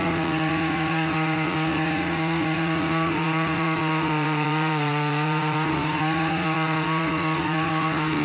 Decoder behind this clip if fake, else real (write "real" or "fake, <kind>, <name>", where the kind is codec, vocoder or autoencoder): fake, vocoder, Vocos